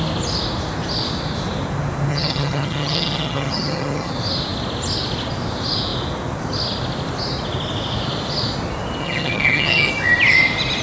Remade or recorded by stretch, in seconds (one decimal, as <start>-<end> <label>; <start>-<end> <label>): 0.0-2.1 recorded; 2.1-4.1 remade; 4.1-9.0 recorded; 9.0-9.9 remade; 9.9-10.8 recorded